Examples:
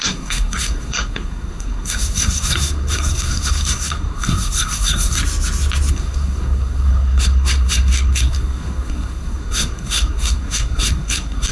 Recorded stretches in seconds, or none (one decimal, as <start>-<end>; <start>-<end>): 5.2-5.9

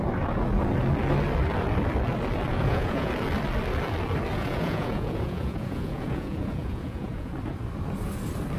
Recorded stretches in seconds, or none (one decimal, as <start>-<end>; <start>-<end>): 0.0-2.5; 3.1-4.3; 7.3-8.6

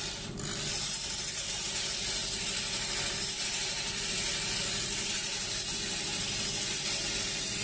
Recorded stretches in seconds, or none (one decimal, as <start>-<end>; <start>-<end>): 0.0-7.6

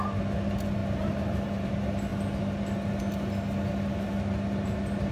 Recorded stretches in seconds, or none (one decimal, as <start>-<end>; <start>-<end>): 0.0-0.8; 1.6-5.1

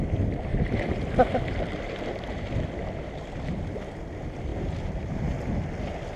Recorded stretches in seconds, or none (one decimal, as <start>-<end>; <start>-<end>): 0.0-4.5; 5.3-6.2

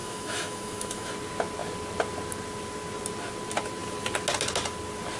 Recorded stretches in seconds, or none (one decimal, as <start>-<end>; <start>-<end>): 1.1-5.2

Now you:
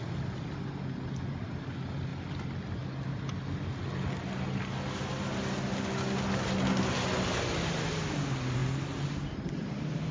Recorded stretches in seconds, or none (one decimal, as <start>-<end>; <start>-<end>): 0.0-10.1